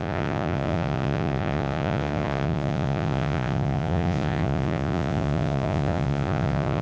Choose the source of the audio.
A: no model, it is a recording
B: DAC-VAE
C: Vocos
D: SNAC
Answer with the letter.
C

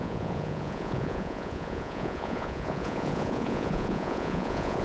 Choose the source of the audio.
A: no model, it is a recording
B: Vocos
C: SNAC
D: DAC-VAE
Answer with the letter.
B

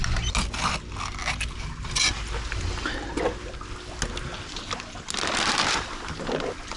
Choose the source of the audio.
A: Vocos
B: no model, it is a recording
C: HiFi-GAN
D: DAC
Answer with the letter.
B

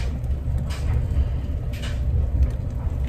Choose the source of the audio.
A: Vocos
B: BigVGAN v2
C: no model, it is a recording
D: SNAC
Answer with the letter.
C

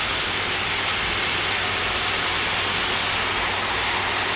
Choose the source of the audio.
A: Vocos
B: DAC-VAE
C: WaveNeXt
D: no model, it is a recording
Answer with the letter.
D